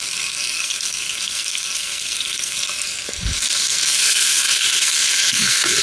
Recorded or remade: remade